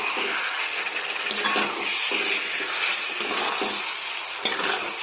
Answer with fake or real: real